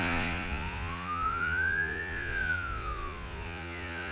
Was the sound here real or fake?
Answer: fake